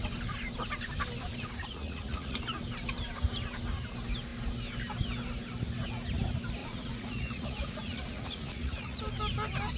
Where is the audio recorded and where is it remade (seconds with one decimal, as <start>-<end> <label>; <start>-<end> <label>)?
0.0-1.7 recorded; 1.7-2.4 remade; 2.4-6.6 recorded; 6.6-9.0 remade; 9.0-9.8 recorded